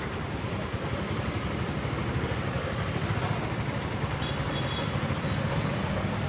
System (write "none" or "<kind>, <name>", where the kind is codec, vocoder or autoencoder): none